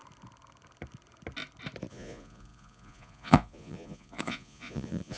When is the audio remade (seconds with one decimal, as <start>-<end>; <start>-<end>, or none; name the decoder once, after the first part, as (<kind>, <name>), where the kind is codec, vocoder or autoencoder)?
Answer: 1.9-5.2 (vocoder, Vocos)